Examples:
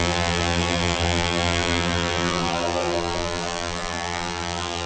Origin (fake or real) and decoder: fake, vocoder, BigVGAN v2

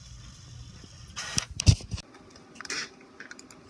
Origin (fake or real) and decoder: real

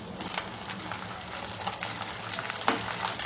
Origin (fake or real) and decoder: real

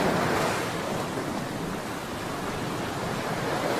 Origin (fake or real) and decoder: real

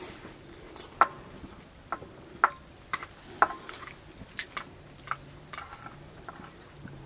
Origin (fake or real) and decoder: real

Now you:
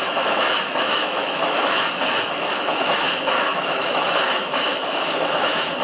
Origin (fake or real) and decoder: fake, autoencoder, DAC-VAE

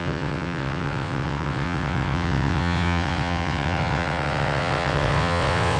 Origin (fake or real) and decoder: fake, vocoder, WaveNeXt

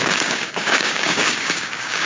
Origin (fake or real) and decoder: fake, codec, DAC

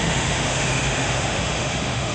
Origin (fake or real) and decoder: fake, autoencoder, DAC-VAE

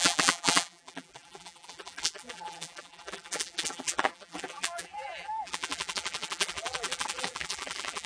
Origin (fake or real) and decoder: fake, vocoder, BigVGAN v2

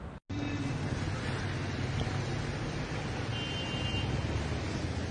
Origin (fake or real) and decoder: real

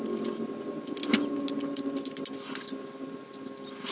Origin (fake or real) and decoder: real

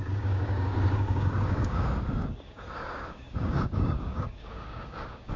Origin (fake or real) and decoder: fake, codec, DAC